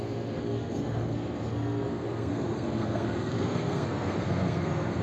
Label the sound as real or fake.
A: fake